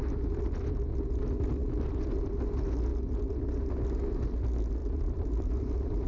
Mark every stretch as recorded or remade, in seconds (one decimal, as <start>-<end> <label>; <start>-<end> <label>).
0.0-4.8 recorded; 4.8-6.1 remade